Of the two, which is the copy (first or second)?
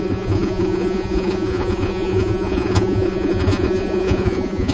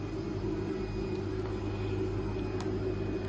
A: first